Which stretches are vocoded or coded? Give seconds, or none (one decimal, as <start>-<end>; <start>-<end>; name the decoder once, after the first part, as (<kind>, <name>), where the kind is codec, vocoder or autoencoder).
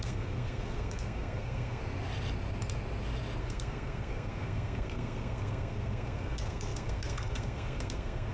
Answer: 0.0-1.8 (codec, SNAC); 3.4-8.3